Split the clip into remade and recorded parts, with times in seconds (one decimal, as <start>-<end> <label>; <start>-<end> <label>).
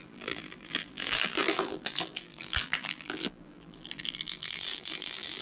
0.0-5.4 remade